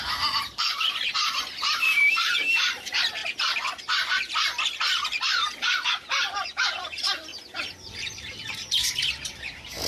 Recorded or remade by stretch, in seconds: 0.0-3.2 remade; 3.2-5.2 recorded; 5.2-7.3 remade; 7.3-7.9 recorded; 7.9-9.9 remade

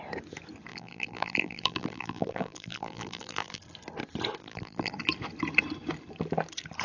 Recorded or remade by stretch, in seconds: 0.0-0.7 recorded; 0.7-3.6 remade; 3.6-4.4 recorded; 4.4-4.9 remade; 4.9-6.8 recorded